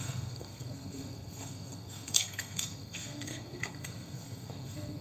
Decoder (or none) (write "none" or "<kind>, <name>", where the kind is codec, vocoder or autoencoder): codec, SNAC